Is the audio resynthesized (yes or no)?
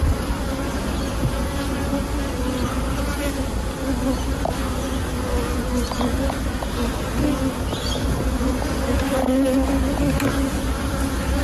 no